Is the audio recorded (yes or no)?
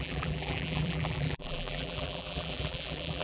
no